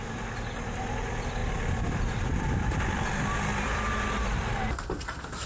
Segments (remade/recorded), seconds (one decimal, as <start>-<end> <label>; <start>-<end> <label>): 0.0-5.5 recorded